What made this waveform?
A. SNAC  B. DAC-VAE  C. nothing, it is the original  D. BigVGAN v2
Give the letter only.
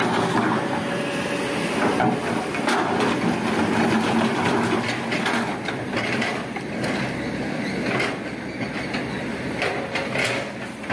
C